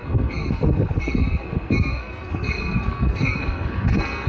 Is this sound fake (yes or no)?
yes